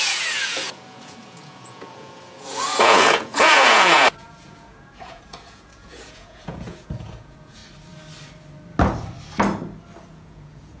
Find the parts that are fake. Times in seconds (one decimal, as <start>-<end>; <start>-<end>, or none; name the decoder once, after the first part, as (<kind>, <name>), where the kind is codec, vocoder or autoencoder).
0.0-7.6 (vocoder, Vocos); 10.0-10.8